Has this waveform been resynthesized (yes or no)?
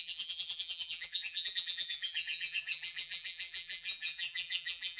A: yes